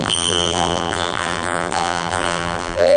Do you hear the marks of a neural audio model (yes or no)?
yes